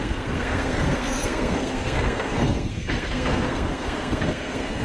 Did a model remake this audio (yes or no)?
yes